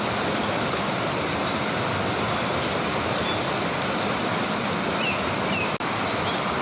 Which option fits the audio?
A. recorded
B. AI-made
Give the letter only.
A